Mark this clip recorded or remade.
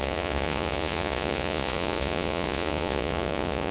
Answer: remade